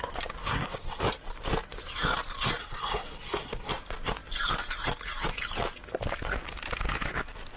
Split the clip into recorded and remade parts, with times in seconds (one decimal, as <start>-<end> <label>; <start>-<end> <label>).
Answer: 0.0-0.4 recorded; 0.4-1.0 remade; 1.0-2.6 recorded; 2.6-3.7 remade; 3.7-7.6 recorded